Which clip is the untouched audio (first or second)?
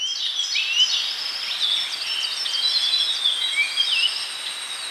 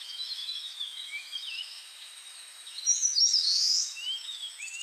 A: first